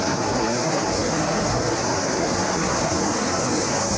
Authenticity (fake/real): fake